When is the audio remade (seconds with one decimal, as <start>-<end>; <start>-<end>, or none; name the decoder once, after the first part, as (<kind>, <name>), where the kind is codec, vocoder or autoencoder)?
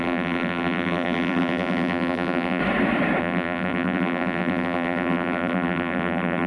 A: 0.0-2.6 (vocoder, BigVGAN v2); 3.2-6.5